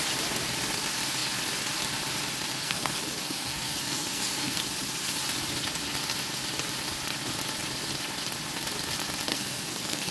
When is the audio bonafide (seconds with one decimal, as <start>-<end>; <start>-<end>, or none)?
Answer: 0.0-2.5; 4.6-9.3